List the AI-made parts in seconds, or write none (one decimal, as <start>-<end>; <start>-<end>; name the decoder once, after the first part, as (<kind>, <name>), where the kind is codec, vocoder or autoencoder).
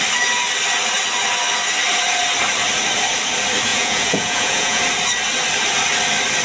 3.7-4.8 (vocoder, Vocos)